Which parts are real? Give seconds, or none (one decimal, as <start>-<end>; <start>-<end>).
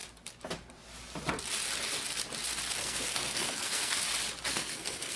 0.0-2.8; 4.0-4.5